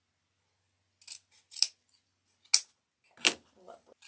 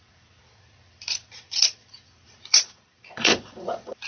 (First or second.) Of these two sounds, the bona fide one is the first